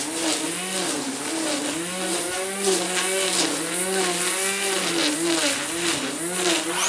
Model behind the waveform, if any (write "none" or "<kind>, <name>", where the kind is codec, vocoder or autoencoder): none